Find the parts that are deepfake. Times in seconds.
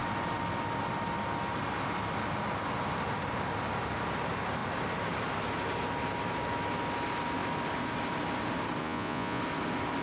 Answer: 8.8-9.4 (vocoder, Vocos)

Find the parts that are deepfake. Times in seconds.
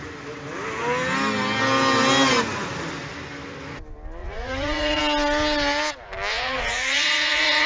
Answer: 4.2-5.0 (vocoder, Vocos); 6.3-7.7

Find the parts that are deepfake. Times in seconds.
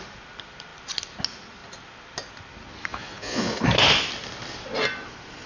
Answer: 2.9-3.6 (vocoder, Vocos)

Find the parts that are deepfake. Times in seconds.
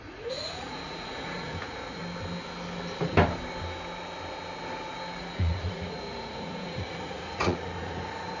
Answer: 0.0-2.0 (vocoder, Vocos); 5.2-8.4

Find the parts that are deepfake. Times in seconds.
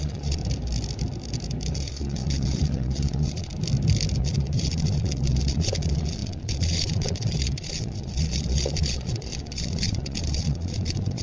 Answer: 0.0-0.4 (vocoder, Vocos); 1.7-3.5; 4.2-11.2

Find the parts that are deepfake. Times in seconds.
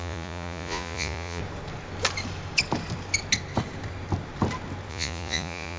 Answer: 0.0-1.4 (vocoder, Vocos); 4.9-5.8